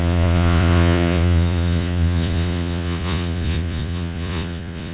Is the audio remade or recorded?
remade